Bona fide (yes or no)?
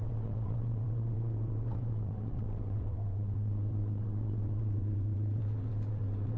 no